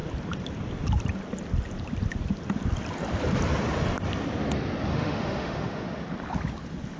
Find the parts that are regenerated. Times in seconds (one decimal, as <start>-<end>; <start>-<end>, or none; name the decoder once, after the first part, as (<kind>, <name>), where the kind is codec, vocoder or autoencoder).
4.9-6.0 (autoencoder, DAC-VAE)